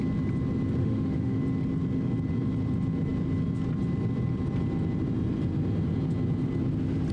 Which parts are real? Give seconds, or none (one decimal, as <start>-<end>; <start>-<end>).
0.0-0.8; 1.4-7.1